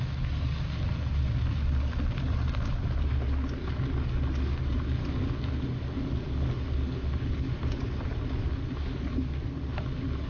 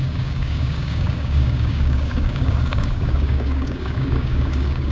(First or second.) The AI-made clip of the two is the second